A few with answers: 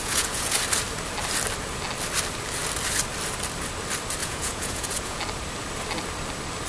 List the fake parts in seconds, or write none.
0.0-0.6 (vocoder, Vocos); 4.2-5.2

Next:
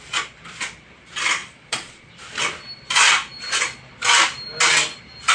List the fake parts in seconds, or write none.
1.4-2.1 (vocoder, Vocos)

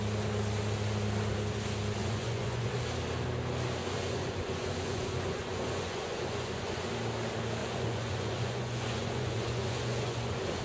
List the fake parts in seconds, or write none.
2.0-2.7 (vocoder, Vocos); 3.8-6.9; 7.6-10.6

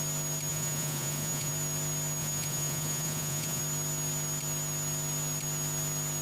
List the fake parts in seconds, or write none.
0.5-1.5 (vocoder, Vocos); 2.2-3.6